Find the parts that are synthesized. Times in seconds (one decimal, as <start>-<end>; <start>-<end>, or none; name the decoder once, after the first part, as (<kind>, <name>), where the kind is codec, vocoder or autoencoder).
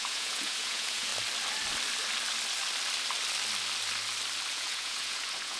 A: 0.0-1.1 (vocoder, Vocos); 4.5-5.6